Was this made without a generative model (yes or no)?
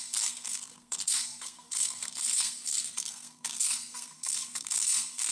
no